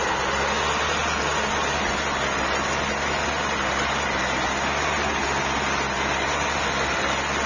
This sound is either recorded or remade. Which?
recorded